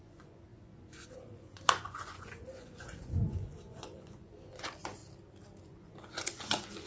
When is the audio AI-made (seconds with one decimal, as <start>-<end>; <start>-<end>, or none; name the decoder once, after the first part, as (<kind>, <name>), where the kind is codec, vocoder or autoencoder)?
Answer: 0.0-5.0 (vocoder, Vocos); 5.6-6.9